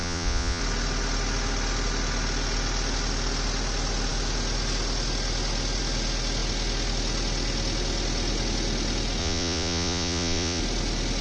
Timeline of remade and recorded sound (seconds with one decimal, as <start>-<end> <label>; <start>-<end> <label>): 0.0-0.6 remade; 0.6-9.2 recorded; 9.2-10.6 remade; 10.6-11.2 recorded